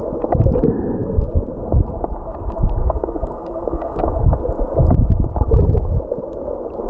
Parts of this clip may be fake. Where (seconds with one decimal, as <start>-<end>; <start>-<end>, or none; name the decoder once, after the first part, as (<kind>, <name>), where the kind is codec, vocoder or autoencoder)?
2.8-4.1 (codec, SNAC)